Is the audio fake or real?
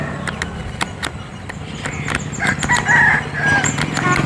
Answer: real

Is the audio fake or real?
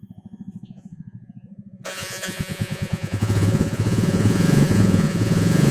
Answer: fake